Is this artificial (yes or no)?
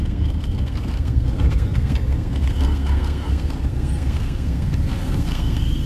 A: yes